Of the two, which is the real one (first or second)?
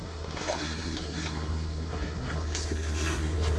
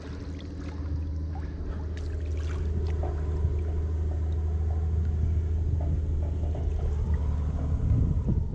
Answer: second